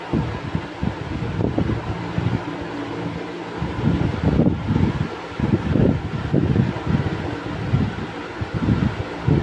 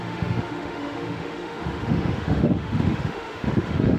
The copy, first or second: second